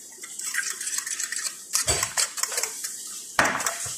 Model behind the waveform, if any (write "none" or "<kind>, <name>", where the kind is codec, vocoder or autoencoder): vocoder, BigVGAN v2